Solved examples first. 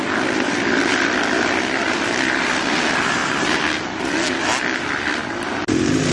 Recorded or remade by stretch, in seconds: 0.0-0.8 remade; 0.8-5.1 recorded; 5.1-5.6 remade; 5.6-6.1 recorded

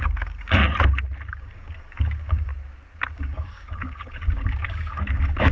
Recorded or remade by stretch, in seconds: 0.0-0.6 remade; 0.6-1.3 recorded; 1.3-2.5 remade; 2.5-3.1 recorded; 3.1-5.5 remade

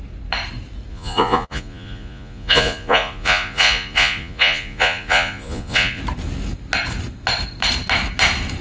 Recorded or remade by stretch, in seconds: 0.0-0.9 recorded; 0.9-6.0 remade; 6.0-8.6 recorded

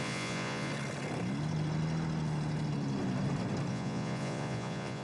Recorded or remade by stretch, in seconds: 0.0-0.7 remade; 0.7-3.7 recorded; 3.7-5.0 remade

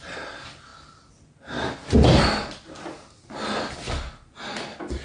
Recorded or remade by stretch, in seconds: 0.0-5.0 recorded